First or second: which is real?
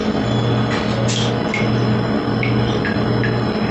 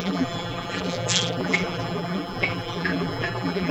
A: first